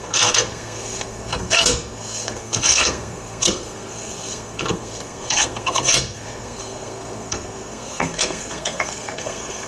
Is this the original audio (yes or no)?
no